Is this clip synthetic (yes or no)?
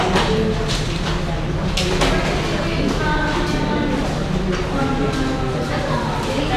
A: no